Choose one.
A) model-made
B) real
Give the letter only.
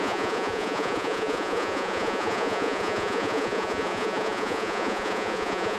A